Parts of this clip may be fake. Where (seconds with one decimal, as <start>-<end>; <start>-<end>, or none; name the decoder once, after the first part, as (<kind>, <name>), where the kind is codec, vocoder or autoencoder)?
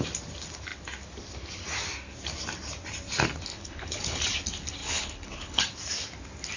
3.5-4.2 (codec, HILCodec); 4.8-5.6